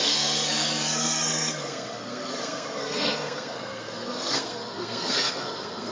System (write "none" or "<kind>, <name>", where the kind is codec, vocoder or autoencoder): codec, SNAC